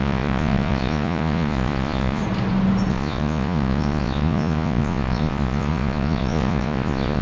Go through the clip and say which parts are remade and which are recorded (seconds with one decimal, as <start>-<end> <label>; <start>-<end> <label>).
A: 0.0-2.2 remade; 2.2-2.9 recorded; 2.9-7.2 remade